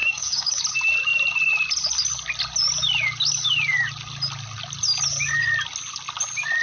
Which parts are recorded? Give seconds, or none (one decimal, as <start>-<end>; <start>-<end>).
0.6-6.6